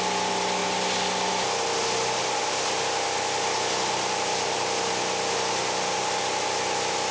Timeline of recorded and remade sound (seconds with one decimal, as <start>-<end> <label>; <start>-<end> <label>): 0.0-7.1 recorded